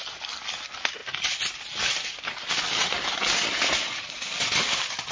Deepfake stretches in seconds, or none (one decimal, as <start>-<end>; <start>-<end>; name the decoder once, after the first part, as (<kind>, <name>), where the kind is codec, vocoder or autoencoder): none